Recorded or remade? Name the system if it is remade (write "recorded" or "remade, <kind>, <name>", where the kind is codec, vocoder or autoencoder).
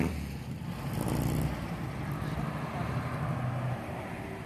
recorded